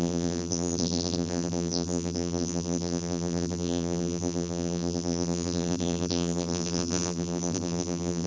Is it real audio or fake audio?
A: fake